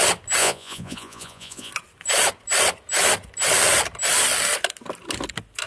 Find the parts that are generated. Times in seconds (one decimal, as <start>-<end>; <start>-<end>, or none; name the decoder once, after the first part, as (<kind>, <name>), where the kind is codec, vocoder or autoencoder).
0.4-1.7 (vocoder, Vocos)